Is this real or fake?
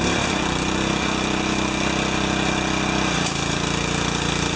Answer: real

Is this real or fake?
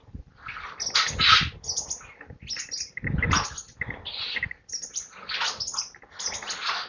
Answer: real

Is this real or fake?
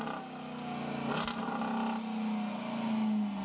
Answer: real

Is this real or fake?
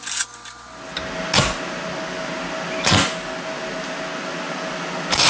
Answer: real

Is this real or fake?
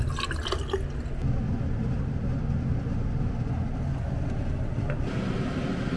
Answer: real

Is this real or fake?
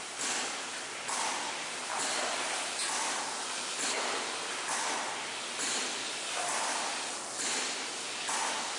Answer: real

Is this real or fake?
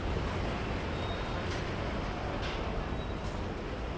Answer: real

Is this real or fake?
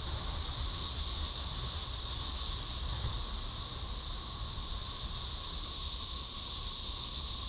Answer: real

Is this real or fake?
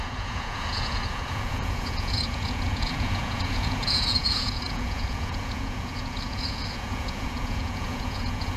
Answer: fake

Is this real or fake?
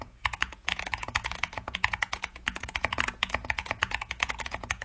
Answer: fake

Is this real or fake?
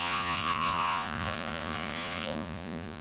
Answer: fake